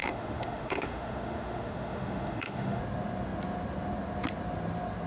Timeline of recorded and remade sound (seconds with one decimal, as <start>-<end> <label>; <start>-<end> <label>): 0.0-2.8 remade; 2.8-5.1 recorded